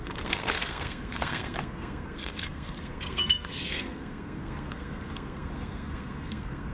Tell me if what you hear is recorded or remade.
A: remade